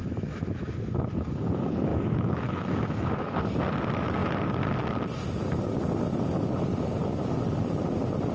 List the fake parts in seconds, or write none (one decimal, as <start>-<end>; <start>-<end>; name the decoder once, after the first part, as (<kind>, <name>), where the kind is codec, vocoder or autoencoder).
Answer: 0.0-0.7 (autoencoder, DAC-VAE); 1.9-3.4